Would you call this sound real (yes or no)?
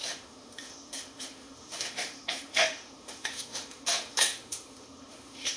no